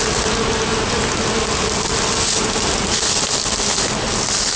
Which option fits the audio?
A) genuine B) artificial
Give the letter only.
A